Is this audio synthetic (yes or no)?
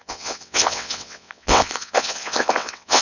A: yes